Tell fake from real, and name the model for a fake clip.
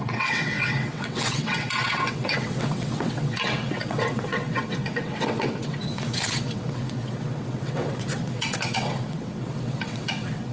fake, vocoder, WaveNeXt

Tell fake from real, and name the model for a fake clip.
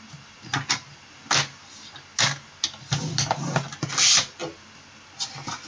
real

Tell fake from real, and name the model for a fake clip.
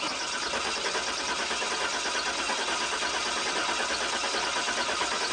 real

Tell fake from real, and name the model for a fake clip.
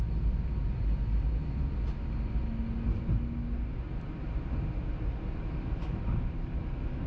real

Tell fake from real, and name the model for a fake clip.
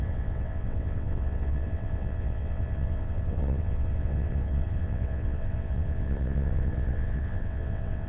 fake, vocoder, WaveNeXt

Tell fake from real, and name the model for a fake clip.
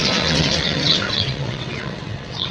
fake, vocoder, WaveNeXt